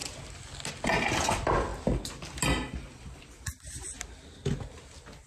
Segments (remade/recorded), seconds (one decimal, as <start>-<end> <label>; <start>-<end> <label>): 0.0-5.3 recorded